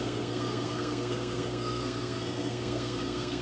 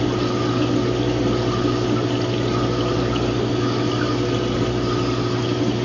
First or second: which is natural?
second